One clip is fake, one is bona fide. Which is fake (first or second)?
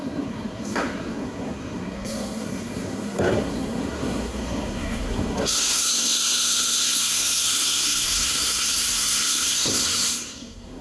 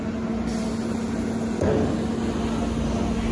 first